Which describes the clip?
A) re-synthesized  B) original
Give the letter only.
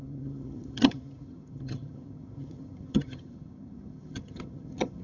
A